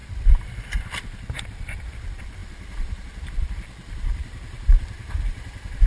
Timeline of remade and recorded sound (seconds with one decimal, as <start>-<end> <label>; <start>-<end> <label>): 0.0-5.9 recorded

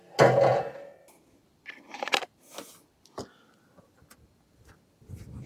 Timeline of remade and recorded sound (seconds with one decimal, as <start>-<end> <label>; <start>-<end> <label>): 0.0-5.5 recorded

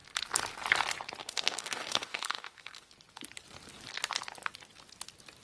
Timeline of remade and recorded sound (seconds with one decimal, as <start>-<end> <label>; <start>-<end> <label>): 0.0-1.2 recorded; 1.2-2.9 remade; 2.9-5.4 recorded

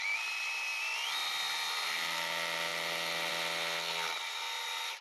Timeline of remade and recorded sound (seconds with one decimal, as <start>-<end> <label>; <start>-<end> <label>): 0.0-5.0 recorded